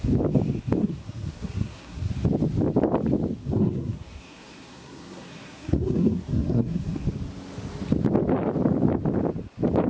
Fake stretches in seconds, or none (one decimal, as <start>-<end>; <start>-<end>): 0.8-2.1; 3.4-7.0